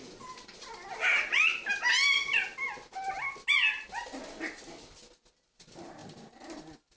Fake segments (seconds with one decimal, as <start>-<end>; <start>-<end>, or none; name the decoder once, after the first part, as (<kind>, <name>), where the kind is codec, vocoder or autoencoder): 6.0-6.6 (vocoder, BigVGAN v2)